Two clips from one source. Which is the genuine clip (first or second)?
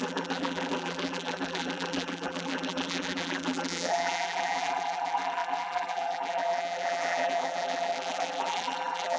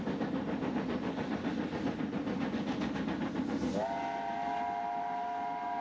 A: second